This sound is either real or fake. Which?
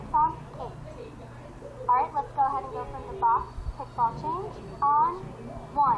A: real